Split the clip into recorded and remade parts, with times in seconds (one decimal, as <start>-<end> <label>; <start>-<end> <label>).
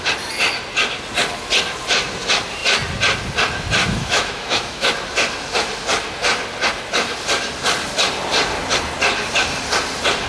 0.0-3.8 recorded; 3.8-4.9 remade; 4.9-10.3 recorded